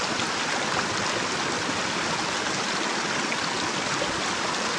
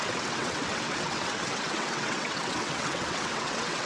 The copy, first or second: second